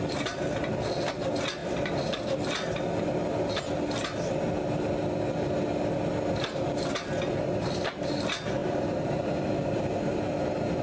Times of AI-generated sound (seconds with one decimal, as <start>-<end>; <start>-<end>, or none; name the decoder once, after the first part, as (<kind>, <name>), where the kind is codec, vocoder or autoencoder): 8.6-10.2 (vocoder, BigVGAN v2)